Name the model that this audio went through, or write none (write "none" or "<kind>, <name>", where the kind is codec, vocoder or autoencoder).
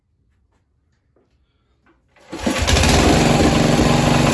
none